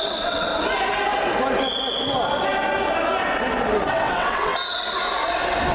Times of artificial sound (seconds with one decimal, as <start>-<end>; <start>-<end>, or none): 0.0-0.5; 3.9-4.5